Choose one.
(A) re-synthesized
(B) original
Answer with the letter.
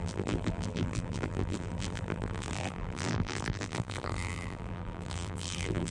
A